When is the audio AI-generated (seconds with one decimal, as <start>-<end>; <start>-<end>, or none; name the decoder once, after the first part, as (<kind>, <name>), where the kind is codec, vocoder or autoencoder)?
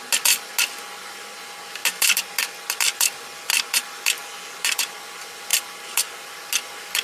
none